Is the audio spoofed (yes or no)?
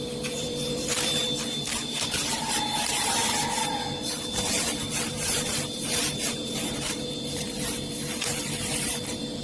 yes